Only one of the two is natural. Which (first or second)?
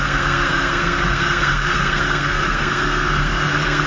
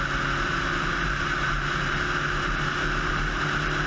second